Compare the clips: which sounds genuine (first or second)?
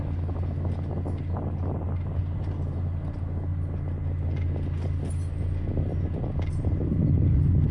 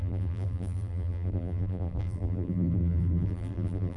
first